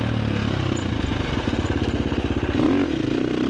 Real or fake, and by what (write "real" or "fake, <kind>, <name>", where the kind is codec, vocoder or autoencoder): real